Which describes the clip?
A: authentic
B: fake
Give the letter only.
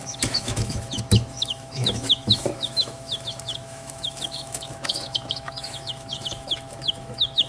B